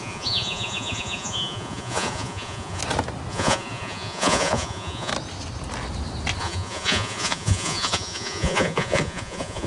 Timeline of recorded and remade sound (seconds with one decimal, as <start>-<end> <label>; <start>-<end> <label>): 0.0-2.8 remade; 2.8-3.3 recorded; 3.3-5.1 remade; 5.1-6.4 recorded; 6.4-9.7 remade